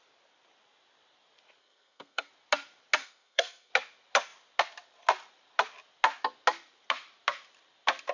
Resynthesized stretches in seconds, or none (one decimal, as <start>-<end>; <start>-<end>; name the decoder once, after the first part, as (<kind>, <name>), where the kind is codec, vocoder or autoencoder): 1.6-2.3 (codec, SNAC); 3.0-3.7